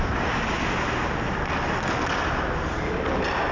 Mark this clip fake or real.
real